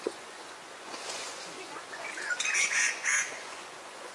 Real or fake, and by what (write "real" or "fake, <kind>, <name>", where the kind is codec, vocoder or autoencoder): fake, vocoder, Vocos